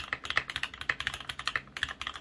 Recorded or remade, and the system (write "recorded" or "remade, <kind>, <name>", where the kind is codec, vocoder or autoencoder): recorded